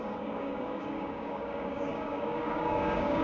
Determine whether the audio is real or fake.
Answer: fake